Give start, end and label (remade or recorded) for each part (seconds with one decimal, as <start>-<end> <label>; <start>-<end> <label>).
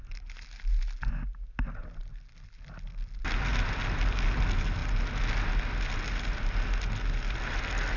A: 0.0-8.0 recorded